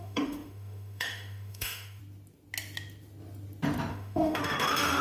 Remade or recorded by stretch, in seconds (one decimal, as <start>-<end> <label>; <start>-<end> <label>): 0.0-2.0 remade; 2.0-3.9 recorded; 3.9-5.0 remade